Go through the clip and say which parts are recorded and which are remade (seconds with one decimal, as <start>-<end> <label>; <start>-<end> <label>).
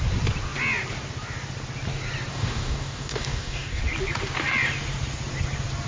0.0-2.3 recorded; 2.3-3.8 remade; 3.8-5.9 recorded